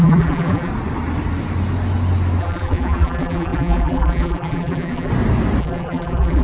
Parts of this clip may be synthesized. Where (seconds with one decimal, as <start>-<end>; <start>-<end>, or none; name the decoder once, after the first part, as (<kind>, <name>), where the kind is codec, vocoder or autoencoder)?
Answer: 0.0-0.7 (vocoder, BigVGAN v2); 2.4-5.1; 5.6-6.4